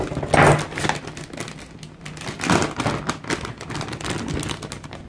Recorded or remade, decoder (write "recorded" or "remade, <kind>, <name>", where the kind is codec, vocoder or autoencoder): recorded